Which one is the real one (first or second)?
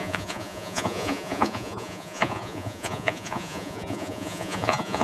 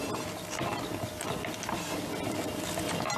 second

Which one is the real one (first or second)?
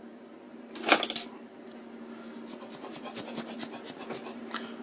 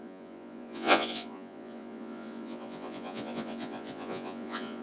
first